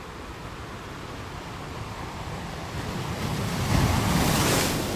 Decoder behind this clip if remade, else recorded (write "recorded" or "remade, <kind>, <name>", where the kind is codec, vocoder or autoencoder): recorded